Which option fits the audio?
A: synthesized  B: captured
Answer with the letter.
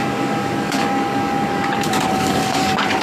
A